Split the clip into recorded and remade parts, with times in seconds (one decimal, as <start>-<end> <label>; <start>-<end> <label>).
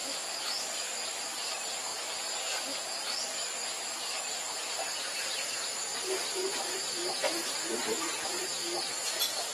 0.0-0.9 recorded; 0.9-1.9 remade; 1.9-2.6 recorded; 2.6-8.5 remade; 8.5-9.5 recorded